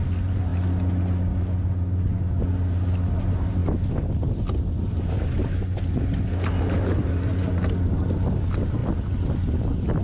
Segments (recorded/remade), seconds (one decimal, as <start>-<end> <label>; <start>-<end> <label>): 0.0-10.0 recorded